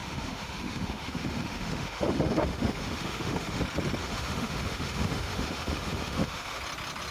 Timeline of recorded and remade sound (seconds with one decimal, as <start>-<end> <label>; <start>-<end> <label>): 0.0-3.6 remade; 3.6-4.0 recorded; 4.0-6.6 remade; 6.6-7.1 recorded